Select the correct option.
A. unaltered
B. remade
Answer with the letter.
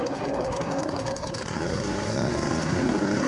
B